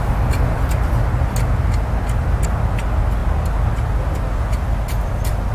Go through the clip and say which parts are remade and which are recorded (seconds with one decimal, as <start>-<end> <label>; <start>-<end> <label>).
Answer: 0.0-5.5 recorded